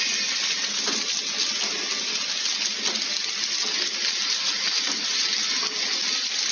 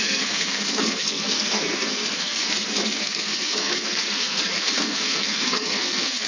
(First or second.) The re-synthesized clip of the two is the second